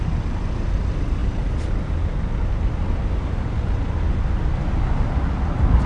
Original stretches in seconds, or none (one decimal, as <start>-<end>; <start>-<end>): 0.0-5.9